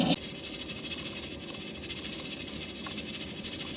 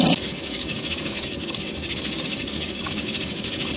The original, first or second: first